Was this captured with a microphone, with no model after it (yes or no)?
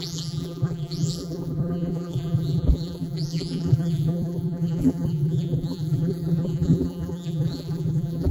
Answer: no